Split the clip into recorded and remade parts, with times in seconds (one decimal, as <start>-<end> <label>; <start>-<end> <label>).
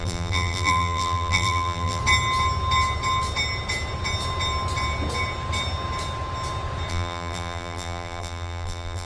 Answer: 0.0-2.0 remade; 2.0-6.9 recorded; 6.9-9.1 remade